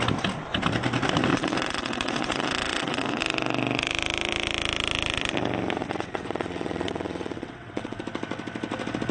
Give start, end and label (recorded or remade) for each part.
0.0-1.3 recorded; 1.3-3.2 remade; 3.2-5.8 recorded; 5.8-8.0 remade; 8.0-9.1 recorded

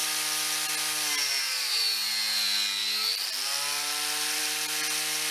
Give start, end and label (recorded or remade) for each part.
0.0-5.3 recorded